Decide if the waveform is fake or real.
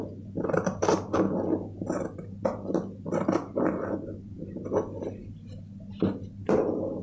real